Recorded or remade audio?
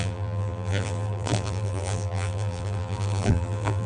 remade